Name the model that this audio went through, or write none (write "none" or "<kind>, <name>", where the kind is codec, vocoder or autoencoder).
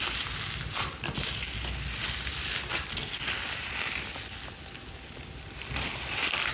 none